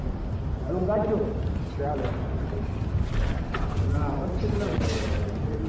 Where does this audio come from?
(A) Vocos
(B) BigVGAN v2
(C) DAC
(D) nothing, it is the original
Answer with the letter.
D